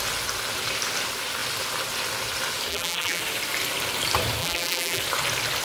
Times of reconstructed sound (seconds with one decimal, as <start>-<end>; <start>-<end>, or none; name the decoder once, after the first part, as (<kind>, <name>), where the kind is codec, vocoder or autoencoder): 2.7-3.2 (vocoder, BigVGAN v2); 4.4-5.0